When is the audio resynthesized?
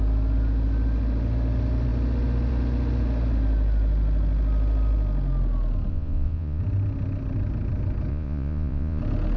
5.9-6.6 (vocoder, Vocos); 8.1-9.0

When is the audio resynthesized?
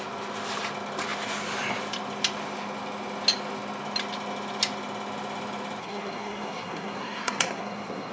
5.8-8.1 (codec, SNAC)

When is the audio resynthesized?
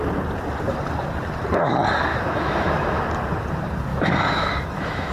2.1-3.0 (autoencoder, DAC-VAE); 3.9-5.1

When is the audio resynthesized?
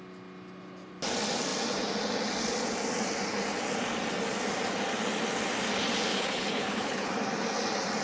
6.1-7.1 (codec, HILCodec)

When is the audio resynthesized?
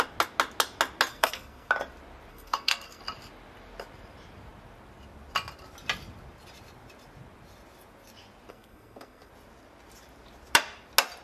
1.1-1.7 (codec, SNAC); 2.3-3.0; 8.5-9.3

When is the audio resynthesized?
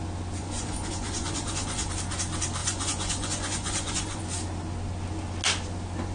0.4-1.9 (vocoder, Vocos); 2.6-4.2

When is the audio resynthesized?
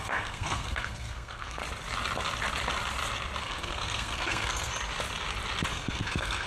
0.0-1.6 (codec, SNAC); 3.4-4.7; 5.7-6.5